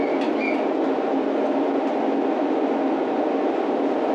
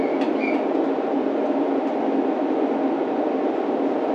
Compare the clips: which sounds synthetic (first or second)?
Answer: second